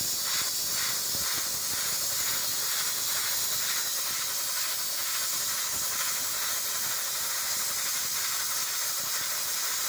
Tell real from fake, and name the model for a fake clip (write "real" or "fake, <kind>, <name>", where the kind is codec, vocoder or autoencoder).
real